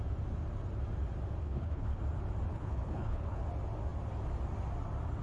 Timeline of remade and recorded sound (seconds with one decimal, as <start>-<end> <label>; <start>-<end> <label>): 0.0-1.4 recorded; 1.4-2.0 remade; 2.0-2.5 recorded; 2.5-3.4 remade; 3.4-5.2 recorded